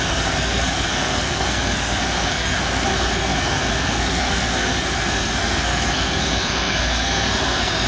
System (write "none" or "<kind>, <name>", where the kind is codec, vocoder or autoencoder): codec, SNAC